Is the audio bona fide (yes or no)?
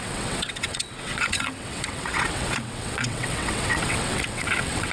no